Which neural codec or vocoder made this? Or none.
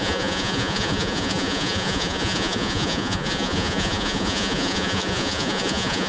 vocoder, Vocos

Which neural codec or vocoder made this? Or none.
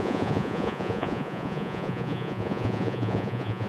vocoder, Vocos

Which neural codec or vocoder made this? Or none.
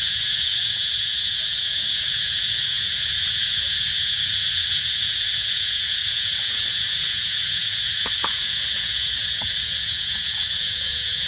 vocoder, Vocos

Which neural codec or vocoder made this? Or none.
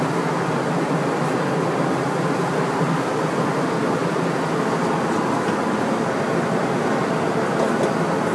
none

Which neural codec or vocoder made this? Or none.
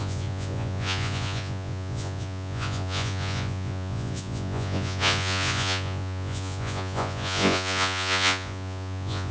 vocoder, Vocos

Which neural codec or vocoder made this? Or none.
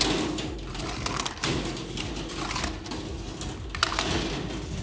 none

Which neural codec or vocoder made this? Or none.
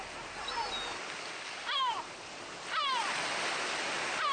none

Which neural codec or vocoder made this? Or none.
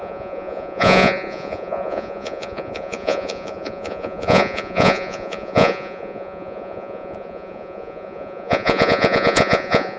vocoder, Vocos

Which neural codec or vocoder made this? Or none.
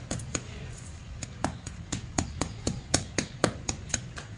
vocoder, Vocos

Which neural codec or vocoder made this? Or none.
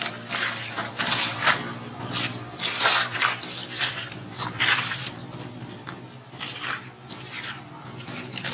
none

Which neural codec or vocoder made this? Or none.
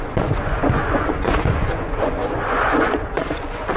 vocoder, Vocos